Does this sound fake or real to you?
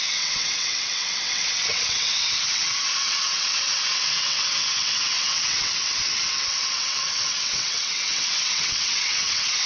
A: fake